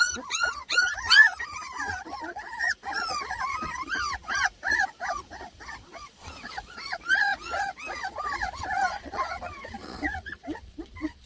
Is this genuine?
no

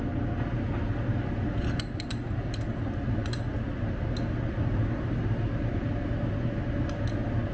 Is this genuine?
yes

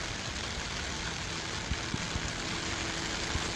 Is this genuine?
yes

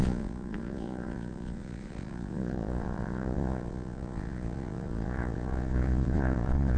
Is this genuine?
no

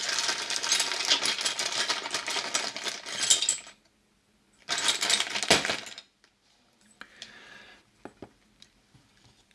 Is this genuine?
yes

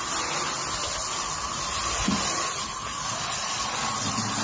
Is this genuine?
yes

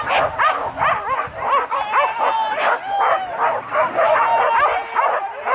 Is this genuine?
yes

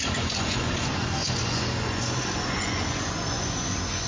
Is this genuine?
no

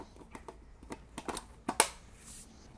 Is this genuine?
yes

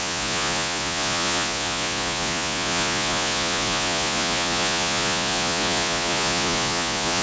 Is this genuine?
no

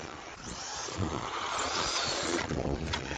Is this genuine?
no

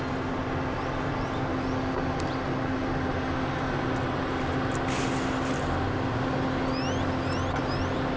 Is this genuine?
yes